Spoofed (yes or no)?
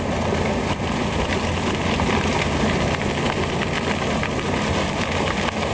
no